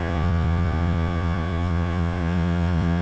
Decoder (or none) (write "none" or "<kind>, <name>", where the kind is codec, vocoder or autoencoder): vocoder, Vocos